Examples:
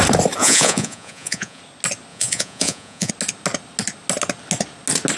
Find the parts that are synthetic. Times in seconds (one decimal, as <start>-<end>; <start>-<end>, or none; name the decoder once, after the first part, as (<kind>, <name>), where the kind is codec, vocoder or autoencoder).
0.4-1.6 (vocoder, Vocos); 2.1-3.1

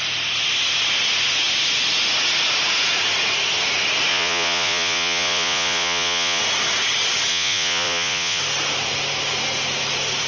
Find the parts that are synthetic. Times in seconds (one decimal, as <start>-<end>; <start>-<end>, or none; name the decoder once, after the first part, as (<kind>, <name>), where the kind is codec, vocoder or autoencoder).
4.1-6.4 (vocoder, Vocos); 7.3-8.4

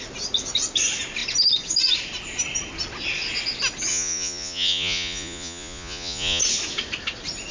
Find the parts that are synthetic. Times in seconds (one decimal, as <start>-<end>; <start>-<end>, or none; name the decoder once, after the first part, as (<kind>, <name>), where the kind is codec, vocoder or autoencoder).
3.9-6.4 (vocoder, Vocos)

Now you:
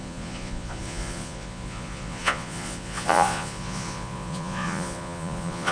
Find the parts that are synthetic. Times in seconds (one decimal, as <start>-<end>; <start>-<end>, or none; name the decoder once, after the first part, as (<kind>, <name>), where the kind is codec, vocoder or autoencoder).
0.0-5.7 (vocoder, Vocos)

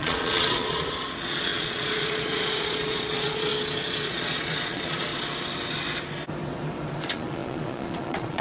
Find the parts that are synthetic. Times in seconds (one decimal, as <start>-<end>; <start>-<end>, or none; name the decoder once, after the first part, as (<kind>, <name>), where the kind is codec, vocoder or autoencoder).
0.0-3.5 (vocoder, Vocos); 4.1-5.1; 6.9-8.4

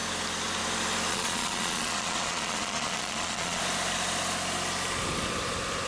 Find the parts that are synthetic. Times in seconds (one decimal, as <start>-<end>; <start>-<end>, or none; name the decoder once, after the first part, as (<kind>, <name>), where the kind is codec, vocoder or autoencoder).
1.1-3.6 (vocoder, Vocos)

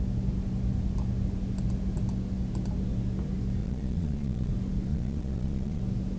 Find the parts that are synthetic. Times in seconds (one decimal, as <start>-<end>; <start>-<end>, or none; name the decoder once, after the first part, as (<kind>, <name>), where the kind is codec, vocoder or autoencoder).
3.6-4.5 (vocoder, Vocos); 4.9-5.8

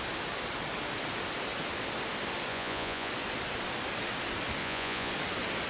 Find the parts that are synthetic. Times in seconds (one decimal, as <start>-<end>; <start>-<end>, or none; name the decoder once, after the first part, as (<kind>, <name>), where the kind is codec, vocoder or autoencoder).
2.5-3.1 (vocoder, Vocos); 4.6-5.1